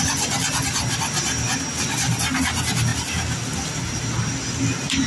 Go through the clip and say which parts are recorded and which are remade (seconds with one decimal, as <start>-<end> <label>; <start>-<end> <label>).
0.0-5.1 recorded